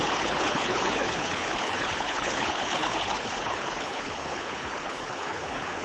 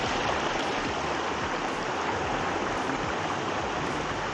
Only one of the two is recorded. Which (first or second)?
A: second